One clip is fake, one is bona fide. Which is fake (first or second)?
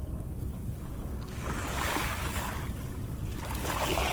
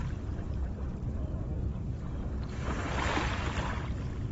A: first